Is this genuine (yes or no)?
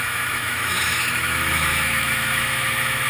no